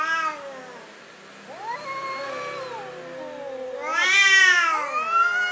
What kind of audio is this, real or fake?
real